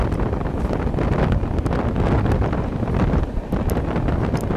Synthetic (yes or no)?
no